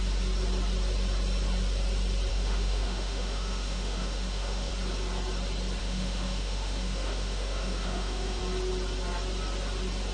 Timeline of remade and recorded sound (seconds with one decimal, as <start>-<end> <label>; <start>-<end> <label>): 0.0-2.3 recorded; 2.3-4.7 remade; 4.7-5.8 recorded; 5.8-8.4 remade; 8.4-10.1 recorded